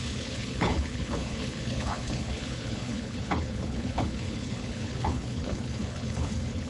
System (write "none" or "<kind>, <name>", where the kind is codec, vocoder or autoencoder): codec, HILCodec